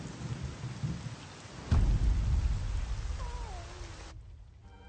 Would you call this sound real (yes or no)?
yes